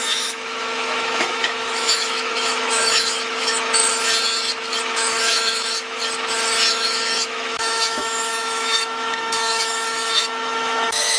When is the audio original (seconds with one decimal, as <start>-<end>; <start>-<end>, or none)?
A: 3.8-4.8; 6.0-6.7